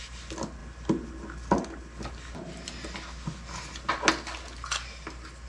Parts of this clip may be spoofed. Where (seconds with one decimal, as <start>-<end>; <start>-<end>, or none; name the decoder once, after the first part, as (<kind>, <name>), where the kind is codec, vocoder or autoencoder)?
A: none